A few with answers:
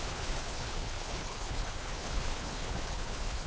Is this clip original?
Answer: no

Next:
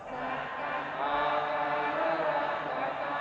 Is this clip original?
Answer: yes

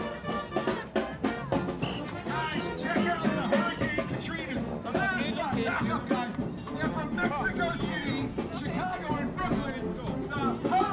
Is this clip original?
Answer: yes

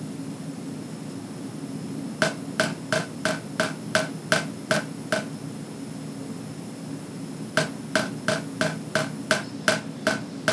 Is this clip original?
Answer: yes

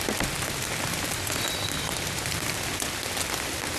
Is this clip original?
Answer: yes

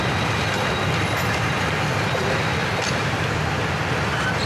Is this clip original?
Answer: yes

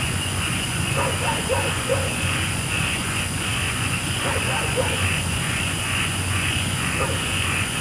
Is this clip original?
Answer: no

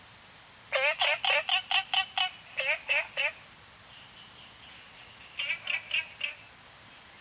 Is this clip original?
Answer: yes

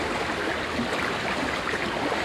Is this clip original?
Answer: yes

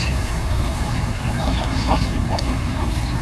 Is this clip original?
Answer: no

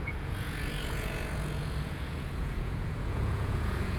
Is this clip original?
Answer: no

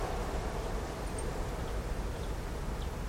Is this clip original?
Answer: yes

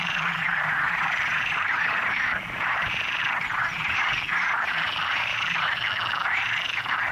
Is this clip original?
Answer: no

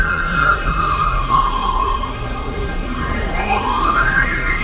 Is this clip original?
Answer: no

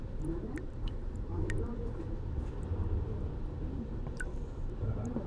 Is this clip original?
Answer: no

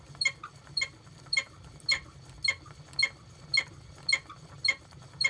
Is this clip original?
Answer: yes